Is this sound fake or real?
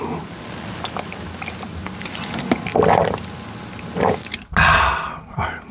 real